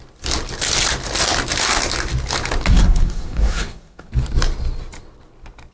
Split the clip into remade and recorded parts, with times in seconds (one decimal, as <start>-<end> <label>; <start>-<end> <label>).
0.0-2.7 recorded; 2.7-4.1 remade; 4.1-5.7 recorded